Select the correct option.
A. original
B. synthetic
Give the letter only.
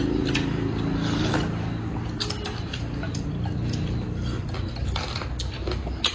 A